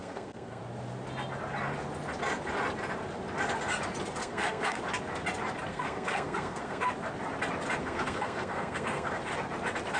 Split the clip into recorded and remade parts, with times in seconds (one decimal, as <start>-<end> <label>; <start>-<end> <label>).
0.0-0.6 remade; 0.6-4.2 recorded; 4.2-4.8 remade; 4.8-5.7 recorded; 5.7-6.8 remade; 6.8-7.8 recorded; 7.8-9.2 remade; 9.2-10.0 recorded